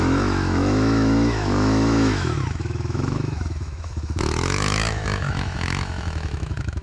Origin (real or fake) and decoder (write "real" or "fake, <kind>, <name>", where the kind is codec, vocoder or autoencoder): fake, autoencoder, DAC-VAE